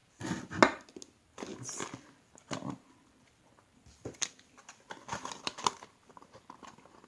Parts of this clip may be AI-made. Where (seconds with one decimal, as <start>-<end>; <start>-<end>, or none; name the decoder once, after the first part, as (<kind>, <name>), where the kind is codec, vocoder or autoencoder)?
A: 0.0-0.5 (vocoder, BigVGAN v2); 1.5-5.6